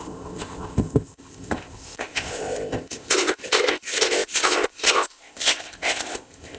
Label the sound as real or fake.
fake